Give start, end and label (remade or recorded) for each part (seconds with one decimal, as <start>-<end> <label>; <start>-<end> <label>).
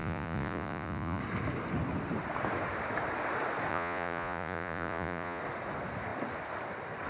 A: 0.0-1.2 remade; 1.2-3.7 recorded; 3.7-5.4 remade; 5.4-7.1 recorded